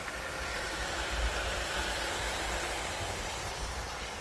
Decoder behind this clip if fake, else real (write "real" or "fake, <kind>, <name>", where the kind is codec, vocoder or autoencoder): fake, vocoder, BigVGAN v2